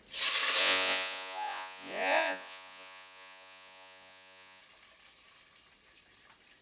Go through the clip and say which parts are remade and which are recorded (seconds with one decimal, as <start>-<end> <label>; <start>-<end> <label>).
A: 0.0-0.6 recorded; 0.6-4.6 remade; 4.6-6.6 recorded